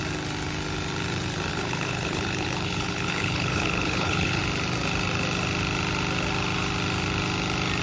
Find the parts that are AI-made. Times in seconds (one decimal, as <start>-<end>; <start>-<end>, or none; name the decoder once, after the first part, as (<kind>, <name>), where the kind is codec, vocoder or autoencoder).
1.5-4.4 (codec, HILCodec)